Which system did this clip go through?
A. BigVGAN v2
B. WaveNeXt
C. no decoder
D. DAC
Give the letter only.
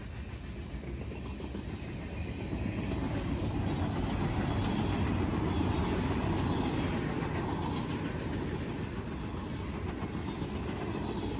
C